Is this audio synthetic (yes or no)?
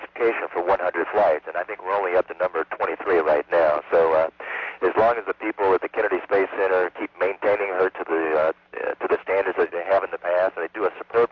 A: no